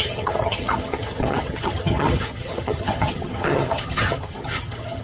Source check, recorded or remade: remade